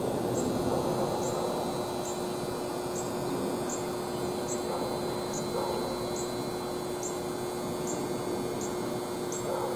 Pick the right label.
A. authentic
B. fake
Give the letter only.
A